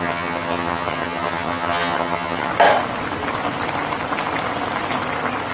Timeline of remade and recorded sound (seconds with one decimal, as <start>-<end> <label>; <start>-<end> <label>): 0.0-2.5 remade; 2.5-5.5 recorded